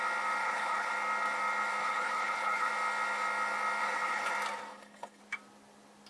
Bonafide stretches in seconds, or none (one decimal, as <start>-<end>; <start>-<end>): 0.0-0.4; 0.9-1.8; 2.7-3.8; 4.3-4.7; 5.2-6.1